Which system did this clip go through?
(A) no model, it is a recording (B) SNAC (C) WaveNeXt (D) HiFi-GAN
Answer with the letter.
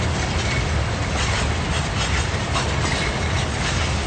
A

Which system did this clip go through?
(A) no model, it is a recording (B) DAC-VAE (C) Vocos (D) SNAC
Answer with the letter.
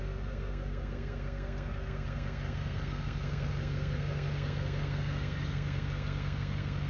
D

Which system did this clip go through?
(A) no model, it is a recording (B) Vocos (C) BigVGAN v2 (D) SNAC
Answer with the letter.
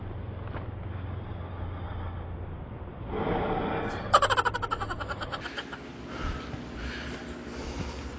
A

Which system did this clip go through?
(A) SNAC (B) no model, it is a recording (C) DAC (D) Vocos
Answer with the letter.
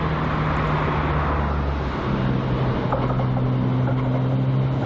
B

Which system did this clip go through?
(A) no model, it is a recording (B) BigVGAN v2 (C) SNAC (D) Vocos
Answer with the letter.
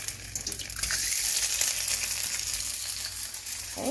A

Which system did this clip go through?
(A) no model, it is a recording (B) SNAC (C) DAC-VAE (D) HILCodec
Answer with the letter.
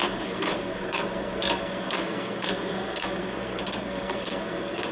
B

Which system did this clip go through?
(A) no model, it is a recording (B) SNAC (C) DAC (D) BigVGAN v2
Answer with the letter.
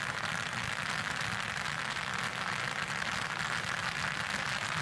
A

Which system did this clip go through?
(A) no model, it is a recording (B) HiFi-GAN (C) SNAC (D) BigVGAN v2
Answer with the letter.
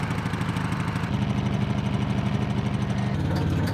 A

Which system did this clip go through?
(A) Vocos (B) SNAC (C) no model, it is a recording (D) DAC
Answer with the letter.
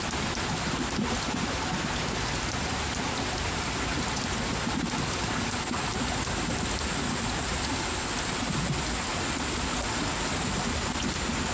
C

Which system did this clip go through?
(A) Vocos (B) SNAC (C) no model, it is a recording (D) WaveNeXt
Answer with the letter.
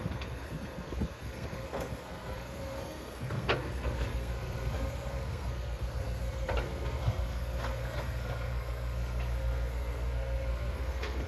B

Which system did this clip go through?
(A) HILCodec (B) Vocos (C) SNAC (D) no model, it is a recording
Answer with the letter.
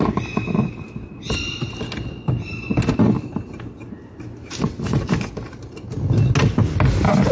D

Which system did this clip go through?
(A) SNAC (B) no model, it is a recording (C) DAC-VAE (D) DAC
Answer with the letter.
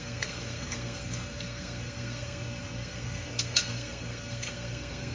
A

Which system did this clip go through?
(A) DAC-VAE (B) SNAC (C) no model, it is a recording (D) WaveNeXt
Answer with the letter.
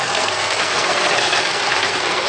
B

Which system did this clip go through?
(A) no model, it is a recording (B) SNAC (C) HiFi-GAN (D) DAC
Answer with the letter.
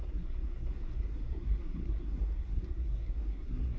B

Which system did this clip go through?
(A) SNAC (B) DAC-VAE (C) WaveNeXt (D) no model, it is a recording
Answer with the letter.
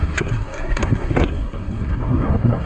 A